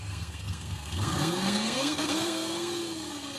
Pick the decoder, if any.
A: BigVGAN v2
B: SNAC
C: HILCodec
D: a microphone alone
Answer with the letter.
B